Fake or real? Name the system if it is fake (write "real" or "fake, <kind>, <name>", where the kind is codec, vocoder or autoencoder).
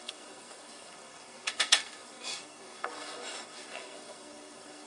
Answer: fake, codec, SNAC